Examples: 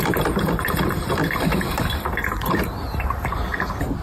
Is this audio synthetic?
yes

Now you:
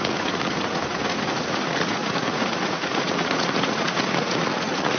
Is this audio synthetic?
yes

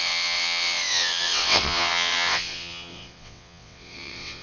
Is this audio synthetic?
yes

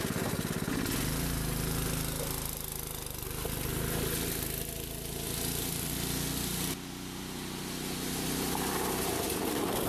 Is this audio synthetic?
no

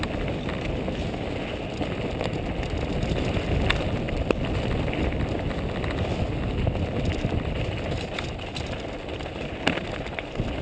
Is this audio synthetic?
no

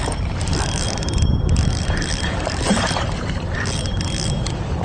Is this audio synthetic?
yes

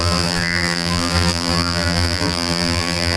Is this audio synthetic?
yes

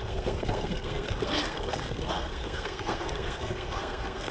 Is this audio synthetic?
yes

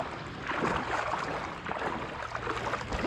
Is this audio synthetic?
no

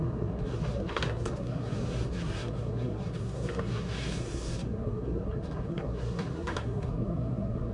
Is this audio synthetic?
yes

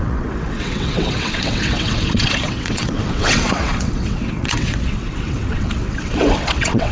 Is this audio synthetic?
yes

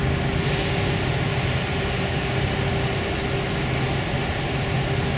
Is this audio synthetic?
no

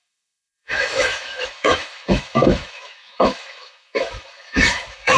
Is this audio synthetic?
yes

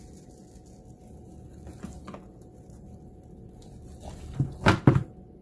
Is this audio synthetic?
no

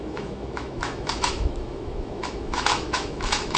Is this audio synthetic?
yes